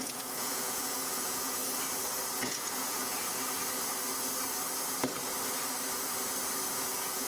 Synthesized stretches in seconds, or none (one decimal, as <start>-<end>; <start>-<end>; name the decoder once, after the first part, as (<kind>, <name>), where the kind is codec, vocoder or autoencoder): 0.0-1.6 (vocoder, Vocos); 2.4-3.3; 6.7-7.3